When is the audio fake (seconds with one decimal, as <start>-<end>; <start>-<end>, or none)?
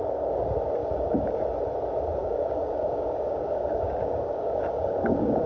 0.8-1.4; 2.2-5.5